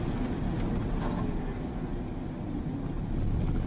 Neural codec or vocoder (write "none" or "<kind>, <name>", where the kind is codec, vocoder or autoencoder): none